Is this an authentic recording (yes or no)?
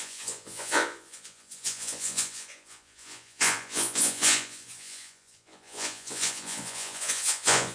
no